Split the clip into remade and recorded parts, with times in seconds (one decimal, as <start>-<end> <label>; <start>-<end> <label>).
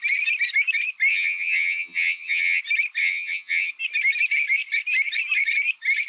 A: 0.0-1.1 recorded; 1.1-2.6 remade; 2.6-3.0 recorded; 3.0-3.7 remade; 3.7-6.1 recorded